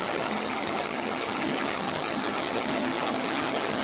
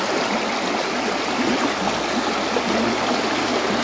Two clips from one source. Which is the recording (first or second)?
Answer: second